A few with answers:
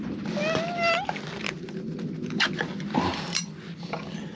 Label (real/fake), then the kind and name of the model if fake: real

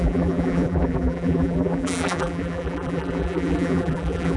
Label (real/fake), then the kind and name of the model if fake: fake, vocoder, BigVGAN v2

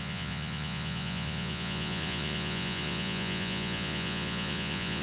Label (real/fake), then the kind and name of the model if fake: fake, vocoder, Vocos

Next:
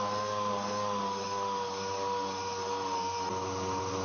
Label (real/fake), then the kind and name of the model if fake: real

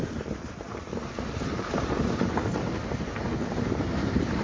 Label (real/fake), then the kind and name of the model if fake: fake, vocoder, BigVGAN v2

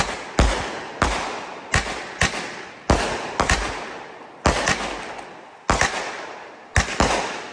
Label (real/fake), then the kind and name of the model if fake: real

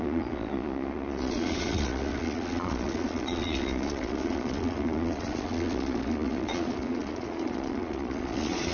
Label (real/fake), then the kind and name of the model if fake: fake, vocoder, Vocos